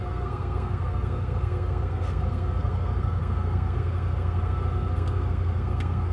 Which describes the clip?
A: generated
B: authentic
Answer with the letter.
A